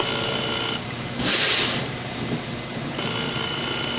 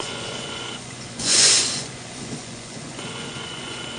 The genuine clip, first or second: first